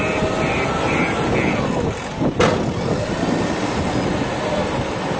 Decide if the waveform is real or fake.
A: real